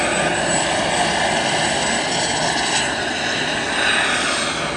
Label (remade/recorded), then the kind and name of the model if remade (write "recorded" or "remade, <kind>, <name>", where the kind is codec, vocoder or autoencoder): recorded